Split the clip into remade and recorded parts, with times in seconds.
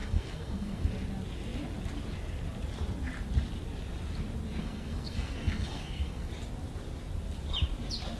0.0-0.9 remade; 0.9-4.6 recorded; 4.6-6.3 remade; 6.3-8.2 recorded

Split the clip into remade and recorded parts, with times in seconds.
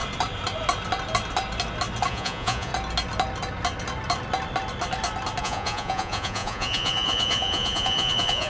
0.0-2.1 recorded; 2.1-2.7 remade; 2.7-5.4 recorded; 5.4-8.5 remade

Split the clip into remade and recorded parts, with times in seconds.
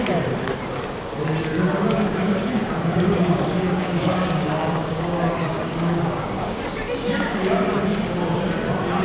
0.0-1.5 recorded; 1.5-6.6 remade; 6.6-9.0 recorded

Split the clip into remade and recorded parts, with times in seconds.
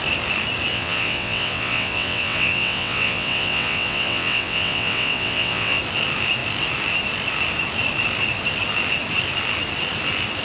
0.0-0.7 recorded; 0.7-5.8 remade; 5.8-10.4 recorded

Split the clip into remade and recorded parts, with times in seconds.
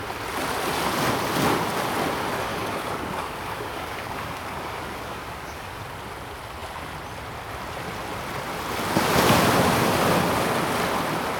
0.0-2.5 recorded; 2.5-5.8 remade; 5.8-11.4 recorded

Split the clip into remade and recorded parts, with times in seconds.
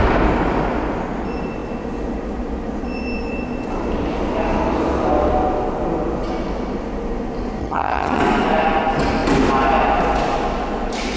0.0-7.6 recorded; 7.6-8.2 remade; 8.2-11.2 recorded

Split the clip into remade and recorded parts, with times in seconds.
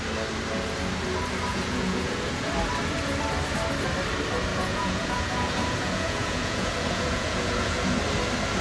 0.0-1.5 recorded; 1.5-2.5 remade; 2.5-4.5 recorded; 4.5-8.0 remade; 8.0-8.6 recorded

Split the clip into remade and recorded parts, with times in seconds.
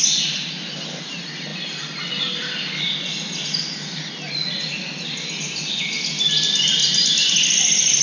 0.0-8.0 recorded